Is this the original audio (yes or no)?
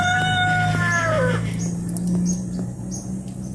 yes